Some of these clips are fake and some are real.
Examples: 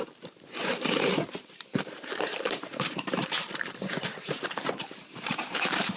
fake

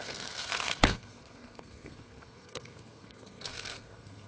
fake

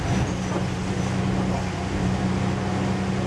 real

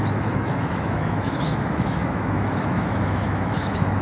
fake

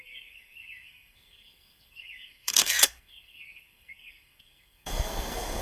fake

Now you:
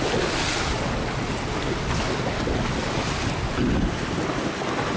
real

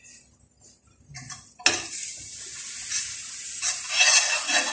real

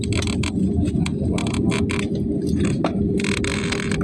real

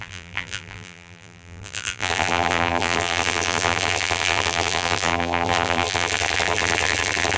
fake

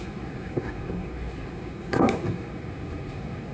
fake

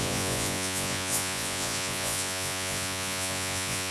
fake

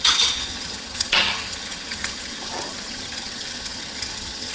fake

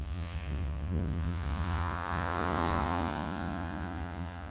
fake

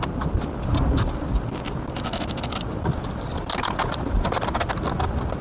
real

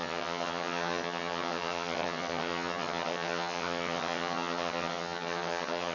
fake